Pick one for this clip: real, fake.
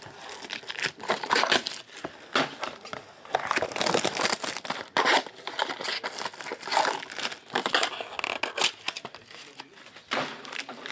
real